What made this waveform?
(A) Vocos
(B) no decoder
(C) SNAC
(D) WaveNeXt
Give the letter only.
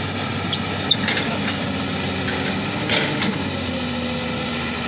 B